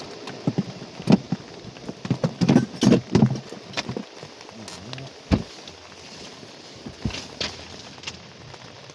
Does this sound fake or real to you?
real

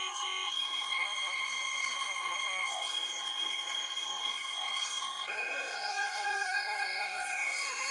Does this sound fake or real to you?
fake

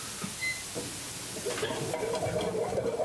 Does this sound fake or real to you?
real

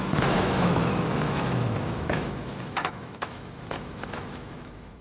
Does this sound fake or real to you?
fake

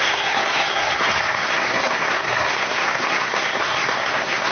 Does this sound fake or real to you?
fake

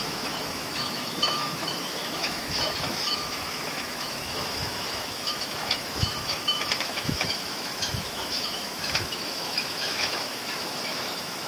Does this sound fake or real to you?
fake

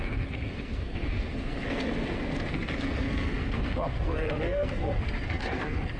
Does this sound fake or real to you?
fake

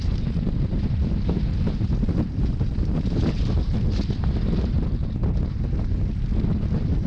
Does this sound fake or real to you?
fake